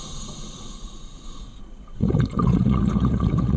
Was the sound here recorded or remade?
remade